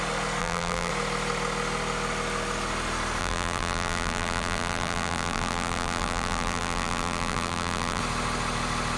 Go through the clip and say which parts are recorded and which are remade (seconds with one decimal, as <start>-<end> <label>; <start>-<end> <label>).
0.0-0.4 recorded; 0.4-0.9 remade; 0.9-3.2 recorded; 3.2-8.0 remade; 8.0-9.0 recorded